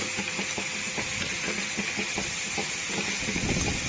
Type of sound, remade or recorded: recorded